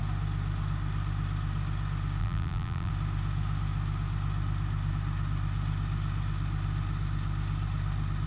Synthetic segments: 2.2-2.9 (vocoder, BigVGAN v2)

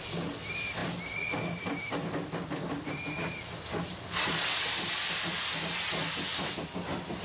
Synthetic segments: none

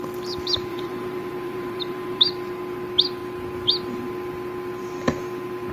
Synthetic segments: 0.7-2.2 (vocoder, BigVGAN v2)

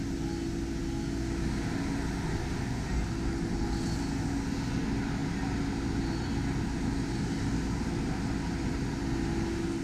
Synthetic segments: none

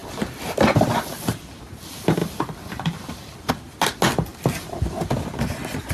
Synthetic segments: 0.0-1.7 (vocoder, BigVGAN v2); 2.2-3.5; 4.3-5.5